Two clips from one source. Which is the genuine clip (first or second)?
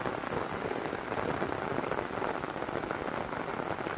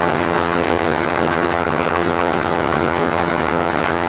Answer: first